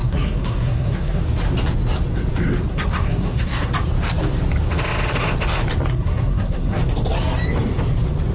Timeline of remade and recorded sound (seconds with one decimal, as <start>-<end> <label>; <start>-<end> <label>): 0.0-1.2 remade; 1.2-2.7 recorded; 2.7-3.7 remade; 3.7-5.9 recorded; 5.9-6.8 remade; 6.8-8.3 recorded